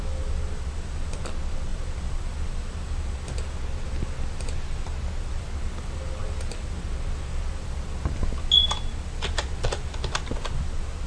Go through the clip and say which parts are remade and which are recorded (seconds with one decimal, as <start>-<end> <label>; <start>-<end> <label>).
0.0-11.1 recorded